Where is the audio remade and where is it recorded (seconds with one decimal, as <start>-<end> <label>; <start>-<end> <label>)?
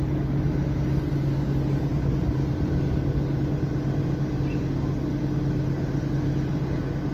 0.0-1.9 recorded; 1.9-2.5 remade; 2.5-7.1 recorded